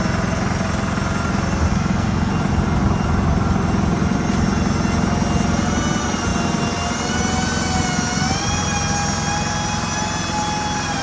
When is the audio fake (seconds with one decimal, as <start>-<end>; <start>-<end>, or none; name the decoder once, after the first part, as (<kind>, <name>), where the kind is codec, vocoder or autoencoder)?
1.7-2.3 (codec, SNAC)